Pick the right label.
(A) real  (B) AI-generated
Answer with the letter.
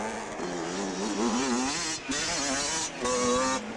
A